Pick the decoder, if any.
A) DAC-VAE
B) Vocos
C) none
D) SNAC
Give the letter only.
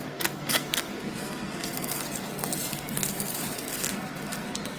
D